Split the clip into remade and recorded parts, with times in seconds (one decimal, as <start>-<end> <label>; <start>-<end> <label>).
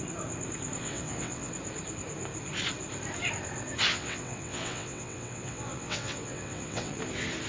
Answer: 0.0-0.8 recorded; 0.8-1.5 remade; 1.5-3.9 recorded; 3.9-7.0 remade; 7.0-7.5 recorded